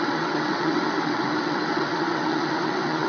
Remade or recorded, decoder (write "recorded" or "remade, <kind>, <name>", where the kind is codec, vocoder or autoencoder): remade, vocoder, WaveNeXt